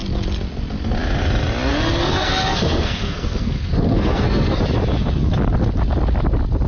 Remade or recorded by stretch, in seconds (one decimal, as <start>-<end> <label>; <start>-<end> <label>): 0.0-1.7 recorded; 1.7-4.6 remade; 4.6-6.7 recorded